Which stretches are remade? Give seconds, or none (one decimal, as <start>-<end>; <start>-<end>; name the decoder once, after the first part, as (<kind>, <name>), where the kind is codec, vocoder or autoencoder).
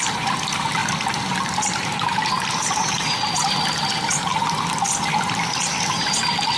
none